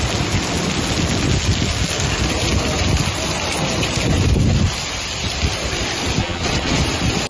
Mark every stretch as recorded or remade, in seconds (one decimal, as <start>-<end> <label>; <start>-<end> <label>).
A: 0.0-6.2 recorded; 6.2-6.8 remade; 6.8-7.3 recorded